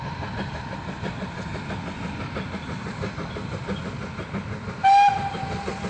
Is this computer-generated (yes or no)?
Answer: no